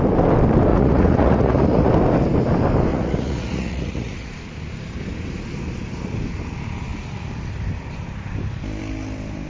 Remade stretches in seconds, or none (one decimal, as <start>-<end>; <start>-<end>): 0.7-1.9; 2.9-4.3